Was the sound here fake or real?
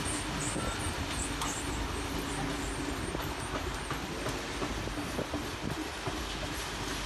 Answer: real